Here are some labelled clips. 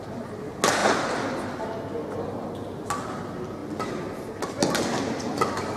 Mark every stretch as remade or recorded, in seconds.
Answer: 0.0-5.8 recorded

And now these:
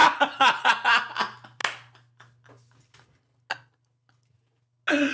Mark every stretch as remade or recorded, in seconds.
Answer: 0.0-0.7 remade; 0.7-5.1 recorded

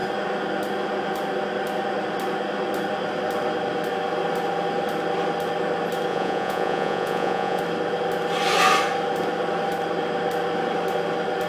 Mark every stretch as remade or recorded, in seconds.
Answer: 0.0-6.1 recorded; 6.1-7.6 remade; 7.6-11.5 recorded

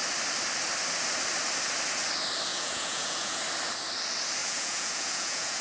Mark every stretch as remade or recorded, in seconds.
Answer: 0.0-2.5 recorded; 2.5-3.4 remade; 3.4-4.4 recorded; 4.4-5.6 remade

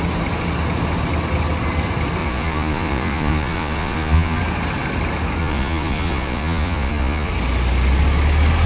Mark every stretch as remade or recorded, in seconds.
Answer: 0.0-2.2 recorded; 2.2-4.4 remade; 4.4-5.4 recorded; 5.4-7.3 remade; 7.3-8.7 recorded

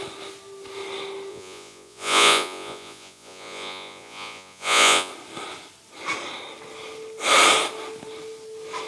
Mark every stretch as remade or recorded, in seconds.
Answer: 0.0-1.3 recorded; 1.3-5.1 remade; 5.1-8.9 recorded

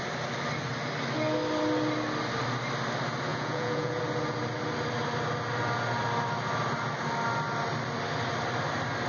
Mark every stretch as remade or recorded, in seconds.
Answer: 0.0-3.3 recorded; 3.3-4.0 remade; 4.0-9.1 recorded